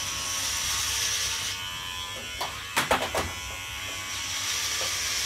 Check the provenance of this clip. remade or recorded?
remade